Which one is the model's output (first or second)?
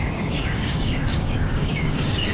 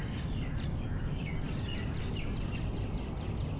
first